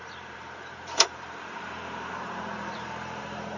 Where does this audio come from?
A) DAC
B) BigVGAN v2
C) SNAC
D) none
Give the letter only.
B